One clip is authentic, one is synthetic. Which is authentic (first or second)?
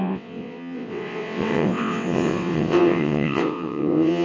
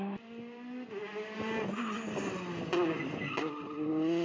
second